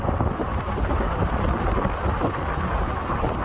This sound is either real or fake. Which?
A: real